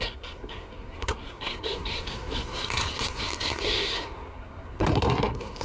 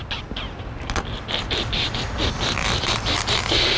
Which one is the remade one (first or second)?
first